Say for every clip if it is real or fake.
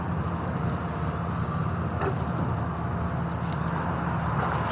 real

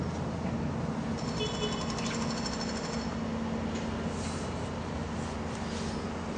real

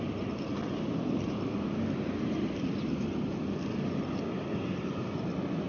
real